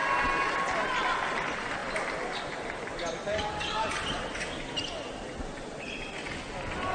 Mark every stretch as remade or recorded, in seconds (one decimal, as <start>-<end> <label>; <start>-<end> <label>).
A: 0.0-6.9 recorded